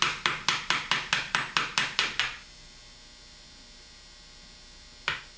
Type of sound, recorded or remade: recorded